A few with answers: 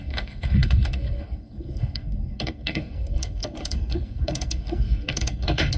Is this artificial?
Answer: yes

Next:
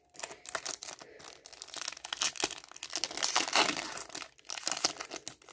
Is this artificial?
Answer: no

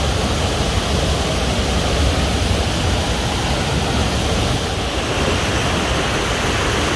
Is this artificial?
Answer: no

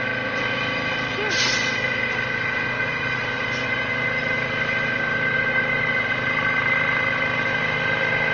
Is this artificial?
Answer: no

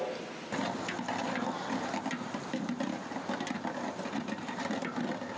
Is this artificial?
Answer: no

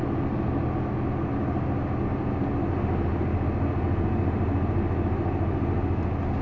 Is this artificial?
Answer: no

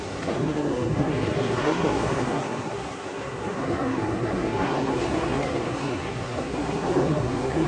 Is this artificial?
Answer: yes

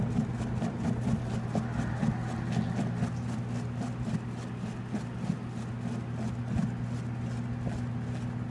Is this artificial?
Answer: no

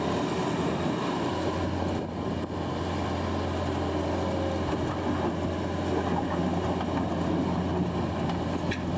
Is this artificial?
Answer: no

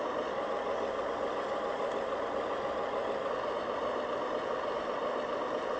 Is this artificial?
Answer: no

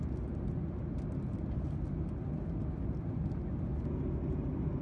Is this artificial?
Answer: no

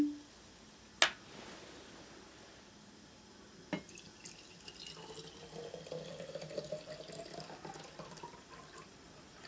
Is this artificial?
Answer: no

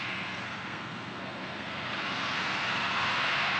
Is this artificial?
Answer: yes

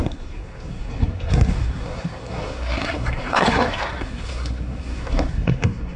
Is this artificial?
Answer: yes